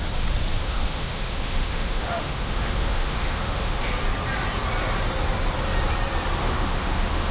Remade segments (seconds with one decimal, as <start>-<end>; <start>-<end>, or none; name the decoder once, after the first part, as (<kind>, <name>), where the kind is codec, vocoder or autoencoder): 0.6-3.9 (autoencoder, DAC-VAE); 6.4-7.3